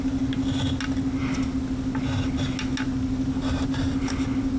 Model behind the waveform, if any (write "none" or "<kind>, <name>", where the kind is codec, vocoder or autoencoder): none